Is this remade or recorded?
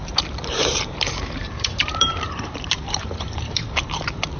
remade